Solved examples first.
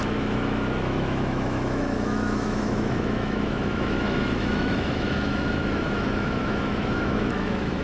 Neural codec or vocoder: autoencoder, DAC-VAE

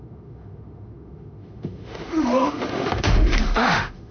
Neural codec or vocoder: autoencoder, DAC-VAE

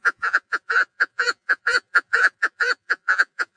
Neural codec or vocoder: vocoder, Vocos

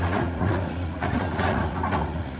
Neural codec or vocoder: vocoder, Vocos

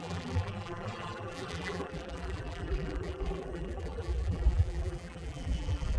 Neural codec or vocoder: vocoder, BigVGAN v2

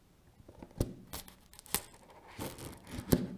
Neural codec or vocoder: none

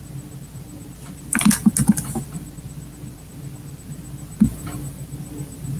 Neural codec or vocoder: none